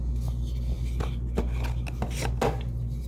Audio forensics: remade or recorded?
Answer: recorded